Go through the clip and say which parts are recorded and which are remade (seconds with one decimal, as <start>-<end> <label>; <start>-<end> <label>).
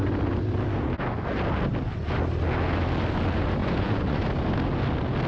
0.0-3.6 recorded; 3.6-4.2 remade; 4.2-5.3 recorded